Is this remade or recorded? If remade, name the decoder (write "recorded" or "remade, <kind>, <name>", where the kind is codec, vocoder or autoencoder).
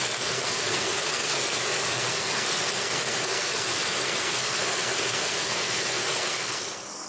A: remade, codec, SNAC